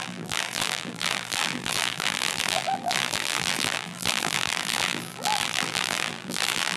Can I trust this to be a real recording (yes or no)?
no